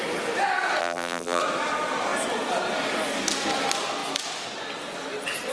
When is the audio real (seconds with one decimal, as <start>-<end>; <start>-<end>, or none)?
0.0-0.8; 1.4-5.5

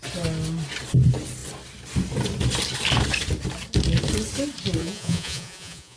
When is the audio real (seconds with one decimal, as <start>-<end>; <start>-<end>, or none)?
0.0-4.8